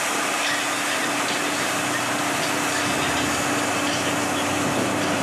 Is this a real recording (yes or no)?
yes